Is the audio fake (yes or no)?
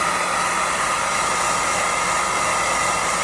no